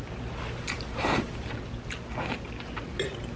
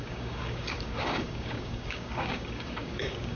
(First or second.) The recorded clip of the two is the first